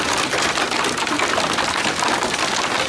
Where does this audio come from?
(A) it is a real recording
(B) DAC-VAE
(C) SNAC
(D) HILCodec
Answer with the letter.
A